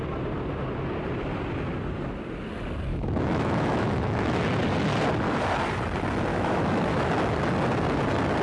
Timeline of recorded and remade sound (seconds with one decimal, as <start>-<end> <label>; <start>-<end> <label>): 0.0-2.9 recorded; 2.9-4.4 remade; 4.4-6.3 recorded; 6.3-7.1 remade; 7.1-8.4 recorded